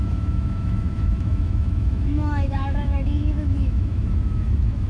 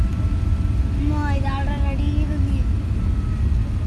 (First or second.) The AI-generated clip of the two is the first